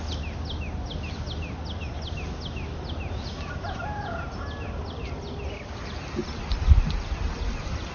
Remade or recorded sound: recorded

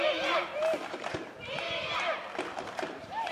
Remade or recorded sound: remade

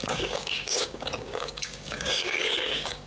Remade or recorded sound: remade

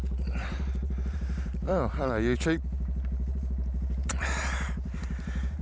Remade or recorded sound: remade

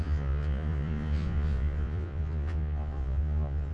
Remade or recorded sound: remade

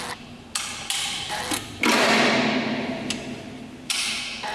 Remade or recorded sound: recorded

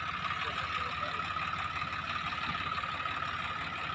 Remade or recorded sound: recorded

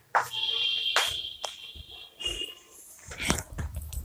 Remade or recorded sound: recorded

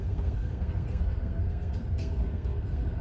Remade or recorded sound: remade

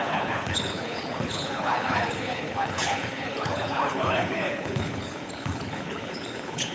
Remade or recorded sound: remade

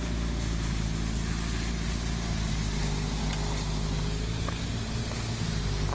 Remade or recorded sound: recorded